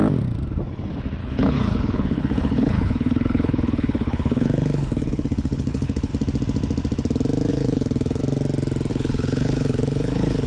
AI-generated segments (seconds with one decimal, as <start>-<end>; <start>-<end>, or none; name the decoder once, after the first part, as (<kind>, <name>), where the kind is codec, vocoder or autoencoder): 1.2-6.1 (codec, HILCodec); 7.5-8.2; 8.9-10.5